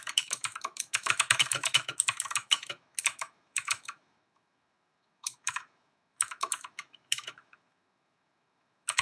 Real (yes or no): no